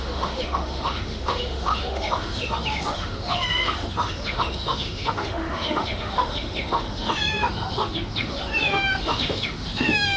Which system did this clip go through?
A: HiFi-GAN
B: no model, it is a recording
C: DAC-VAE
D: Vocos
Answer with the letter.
C